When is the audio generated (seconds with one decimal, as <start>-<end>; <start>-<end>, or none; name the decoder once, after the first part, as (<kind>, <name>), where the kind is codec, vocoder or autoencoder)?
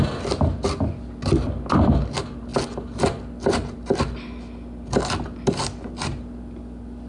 none